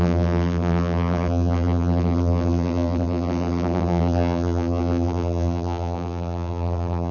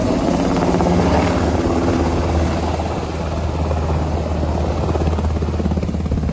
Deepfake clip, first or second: first